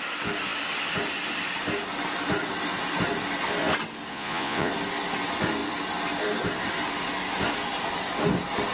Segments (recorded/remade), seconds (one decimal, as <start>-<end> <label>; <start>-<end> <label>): 0.0-4.1 recorded; 4.1-4.7 remade; 4.7-8.7 recorded